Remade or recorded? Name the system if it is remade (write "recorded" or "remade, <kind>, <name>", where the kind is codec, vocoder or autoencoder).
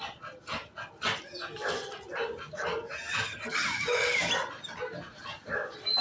recorded